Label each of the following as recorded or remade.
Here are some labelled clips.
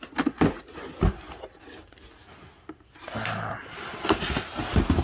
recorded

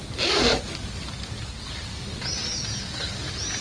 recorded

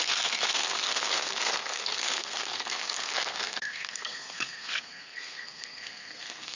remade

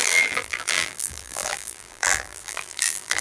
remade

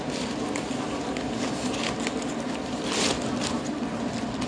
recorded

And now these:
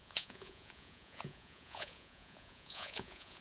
remade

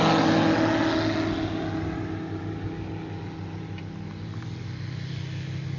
recorded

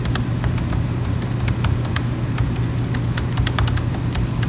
recorded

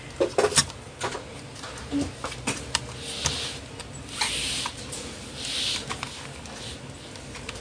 recorded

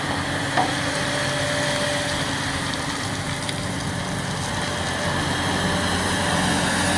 recorded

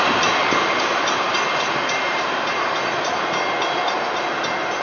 remade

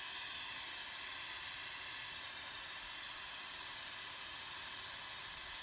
recorded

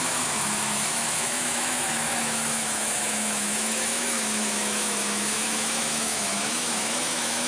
remade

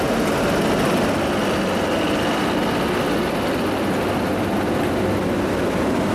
recorded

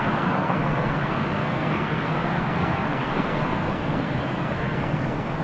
remade